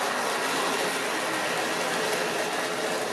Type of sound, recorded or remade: recorded